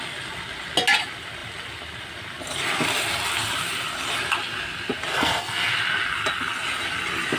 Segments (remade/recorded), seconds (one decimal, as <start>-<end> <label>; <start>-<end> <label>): 0.0-5.1 recorded; 5.1-5.7 remade; 5.7-7.4 recorded